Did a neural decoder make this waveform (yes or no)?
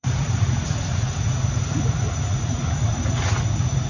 yes